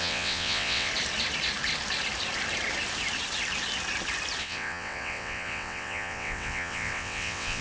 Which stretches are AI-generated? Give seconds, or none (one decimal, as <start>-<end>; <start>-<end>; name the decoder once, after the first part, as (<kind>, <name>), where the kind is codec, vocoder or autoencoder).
0.0-0.9 (vocoder, WaveNeXt); 4.4-7.6